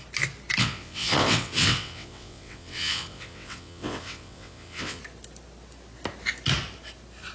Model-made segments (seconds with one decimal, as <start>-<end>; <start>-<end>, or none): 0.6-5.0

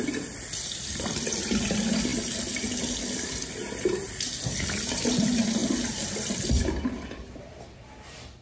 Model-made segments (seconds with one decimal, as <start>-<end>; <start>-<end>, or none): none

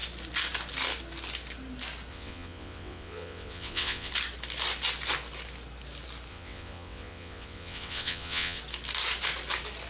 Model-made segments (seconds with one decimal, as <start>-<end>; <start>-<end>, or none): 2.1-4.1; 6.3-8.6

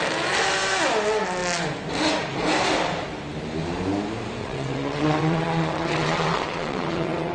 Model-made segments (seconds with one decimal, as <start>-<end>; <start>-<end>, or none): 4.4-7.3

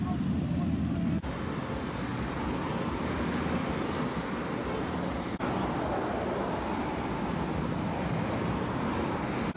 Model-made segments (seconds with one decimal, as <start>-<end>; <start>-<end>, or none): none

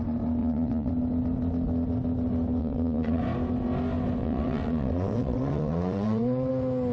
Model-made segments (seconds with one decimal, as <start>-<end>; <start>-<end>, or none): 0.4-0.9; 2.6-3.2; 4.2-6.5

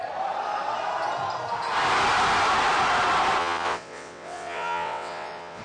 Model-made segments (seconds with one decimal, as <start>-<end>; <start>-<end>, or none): 3.4-5.6

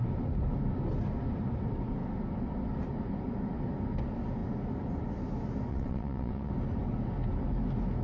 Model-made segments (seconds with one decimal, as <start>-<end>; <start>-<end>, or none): 5.7-6.5